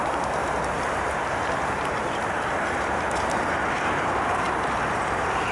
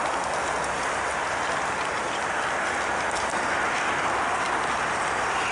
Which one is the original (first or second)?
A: second